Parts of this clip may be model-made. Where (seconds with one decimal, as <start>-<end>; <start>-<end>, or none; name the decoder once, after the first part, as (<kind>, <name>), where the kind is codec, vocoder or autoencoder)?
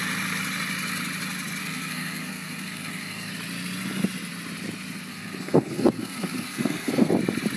1.6-3.3 (codec, SNAC); 5.1-7.1